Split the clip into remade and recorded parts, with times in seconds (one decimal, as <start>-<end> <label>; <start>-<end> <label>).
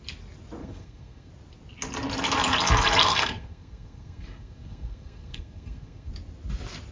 0.0-0.6 recorded; 0.6-1.3 remade; 1.3-3.0 recorded; 3.0-6.1 remade; 6.1-6.9 recorded